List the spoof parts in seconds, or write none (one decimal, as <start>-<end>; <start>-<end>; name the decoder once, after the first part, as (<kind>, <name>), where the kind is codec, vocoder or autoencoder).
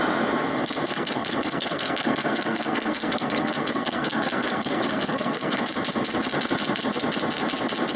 0.9-5.6 (codec, SNAC)